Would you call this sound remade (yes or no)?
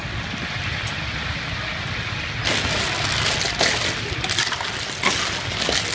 no